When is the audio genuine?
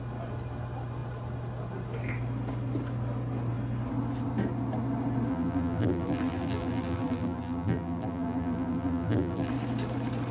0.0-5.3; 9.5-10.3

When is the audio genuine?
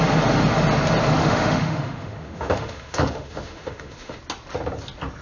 0.0-1.2; 4.2-5.2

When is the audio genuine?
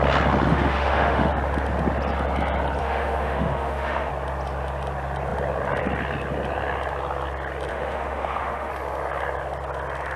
0.0-0.5; 1.3-2.8; 4.1-7.7; 8.7-10.2